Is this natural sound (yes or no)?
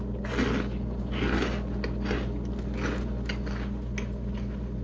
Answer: yes